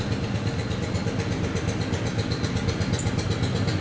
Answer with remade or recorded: recorded